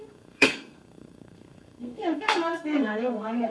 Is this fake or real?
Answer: fake